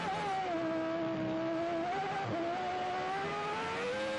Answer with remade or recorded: recorded